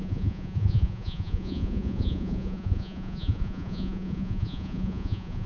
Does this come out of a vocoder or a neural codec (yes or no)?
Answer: yes